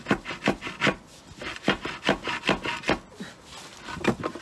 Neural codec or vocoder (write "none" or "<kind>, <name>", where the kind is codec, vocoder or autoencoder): none